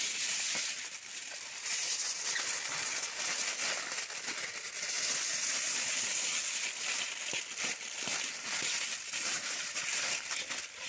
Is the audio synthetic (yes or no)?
no